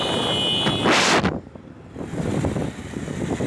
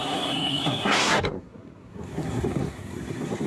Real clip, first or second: first